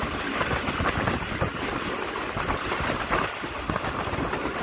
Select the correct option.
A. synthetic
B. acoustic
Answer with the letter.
B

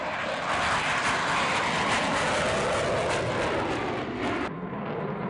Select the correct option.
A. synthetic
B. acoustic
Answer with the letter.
B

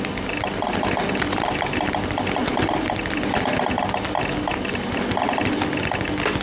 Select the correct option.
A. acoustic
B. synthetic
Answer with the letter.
A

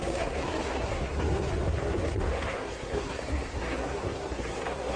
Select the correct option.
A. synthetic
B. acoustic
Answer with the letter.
A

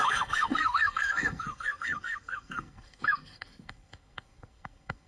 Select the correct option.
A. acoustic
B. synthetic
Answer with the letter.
B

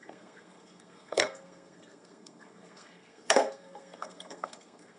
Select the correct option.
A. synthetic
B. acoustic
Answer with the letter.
A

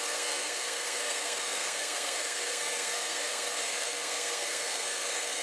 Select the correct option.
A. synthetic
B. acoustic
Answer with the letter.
A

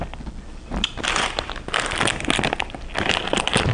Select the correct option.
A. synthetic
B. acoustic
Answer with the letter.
B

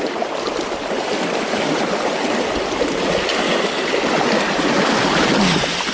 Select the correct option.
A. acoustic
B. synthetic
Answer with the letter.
A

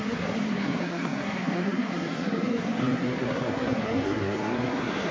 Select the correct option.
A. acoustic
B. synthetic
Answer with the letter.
B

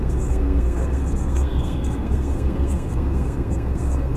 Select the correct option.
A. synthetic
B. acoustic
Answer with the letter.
A